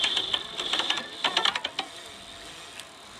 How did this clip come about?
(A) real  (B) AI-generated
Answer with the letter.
A